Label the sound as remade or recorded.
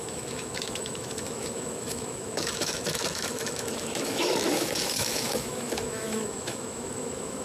remade